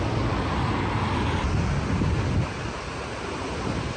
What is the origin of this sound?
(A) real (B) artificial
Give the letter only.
A